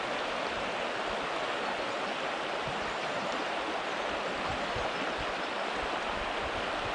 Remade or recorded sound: recorded